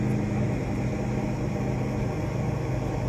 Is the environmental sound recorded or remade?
recorded